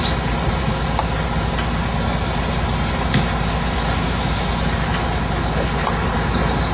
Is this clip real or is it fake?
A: real